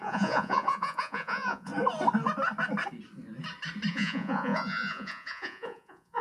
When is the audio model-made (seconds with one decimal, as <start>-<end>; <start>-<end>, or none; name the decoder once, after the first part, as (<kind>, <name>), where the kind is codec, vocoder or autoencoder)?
0.0-1.7 (vocoder, Vocos); 3.9-6.2

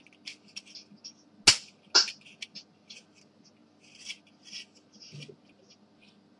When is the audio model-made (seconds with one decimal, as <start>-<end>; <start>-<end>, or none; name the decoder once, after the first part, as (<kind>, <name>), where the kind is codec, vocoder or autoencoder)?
none

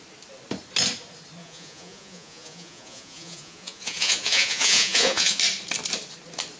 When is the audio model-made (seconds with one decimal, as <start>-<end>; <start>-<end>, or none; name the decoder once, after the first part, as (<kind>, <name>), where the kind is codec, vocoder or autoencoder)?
1.4-5.4 (vocoder, Vocos)

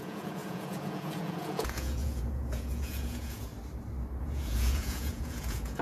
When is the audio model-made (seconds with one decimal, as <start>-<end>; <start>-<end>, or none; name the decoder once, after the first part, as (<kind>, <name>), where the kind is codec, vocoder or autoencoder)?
0.0-3.5 (vocoder, Vocos); 4.2-5.8

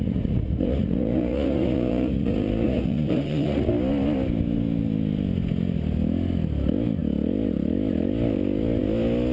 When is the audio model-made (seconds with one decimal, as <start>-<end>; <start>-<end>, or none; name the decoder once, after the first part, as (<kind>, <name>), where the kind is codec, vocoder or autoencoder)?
0.0-3.7 (vocoder, Vocos)

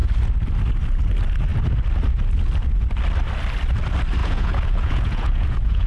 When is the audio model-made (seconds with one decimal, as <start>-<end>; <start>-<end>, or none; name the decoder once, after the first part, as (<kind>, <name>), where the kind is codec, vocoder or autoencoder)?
4.2-5.9 (vocoder, Vocos)

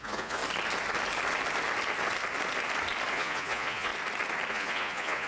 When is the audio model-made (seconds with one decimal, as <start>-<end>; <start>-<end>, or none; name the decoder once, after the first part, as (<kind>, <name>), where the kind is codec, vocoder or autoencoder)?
0.0-0.4 (vocoder, Vocos); 3.1-3.9; 4.5-5.3